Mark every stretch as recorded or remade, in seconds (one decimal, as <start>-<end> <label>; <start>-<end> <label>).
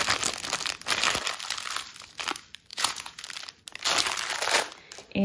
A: 0.0-2.7 recorded; 2.7-3.2 remade; 3.2-5.2 recorded